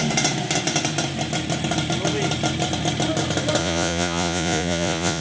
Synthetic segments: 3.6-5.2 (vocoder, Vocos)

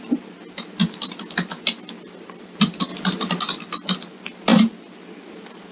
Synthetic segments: none

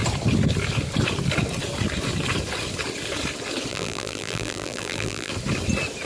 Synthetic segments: 3.7-5.3 (vocoder, BigVGAN v2)